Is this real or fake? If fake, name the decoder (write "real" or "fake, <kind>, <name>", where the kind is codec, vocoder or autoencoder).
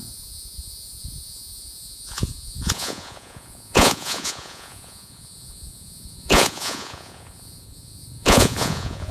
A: fake, vocoder, Vocos